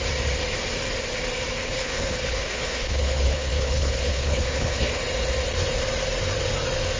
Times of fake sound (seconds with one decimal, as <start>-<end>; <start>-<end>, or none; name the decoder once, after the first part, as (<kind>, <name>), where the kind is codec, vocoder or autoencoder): 1.6-5.0 (codec, HILCodec)